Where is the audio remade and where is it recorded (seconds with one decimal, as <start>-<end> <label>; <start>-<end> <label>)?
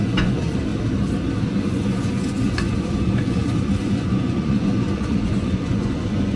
0.0-0.7 remade; 0.7-1.5 recorded; 1.5-6.4 remade